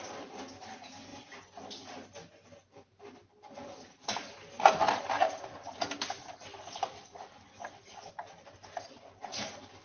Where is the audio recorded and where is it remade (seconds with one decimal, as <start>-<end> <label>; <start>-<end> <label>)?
0.0-9.8 recorded